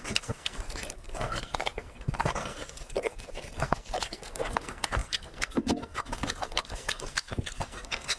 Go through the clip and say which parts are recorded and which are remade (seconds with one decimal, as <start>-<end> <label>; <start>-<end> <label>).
0.0-8.2 remade